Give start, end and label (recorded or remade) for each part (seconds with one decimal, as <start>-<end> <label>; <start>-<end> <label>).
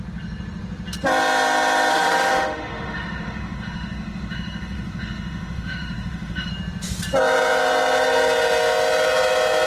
0.0-1.9 recorded; 1.9-6.5 remade; 6.5-9.7 recorded